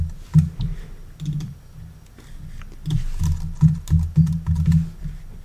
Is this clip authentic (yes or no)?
yes